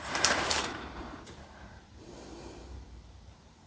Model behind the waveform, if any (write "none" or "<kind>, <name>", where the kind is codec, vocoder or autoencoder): vocoder, BigVGAN v2